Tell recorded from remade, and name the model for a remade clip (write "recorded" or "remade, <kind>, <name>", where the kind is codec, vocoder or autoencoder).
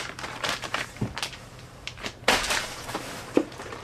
remade, vocoder, BigVGAN v2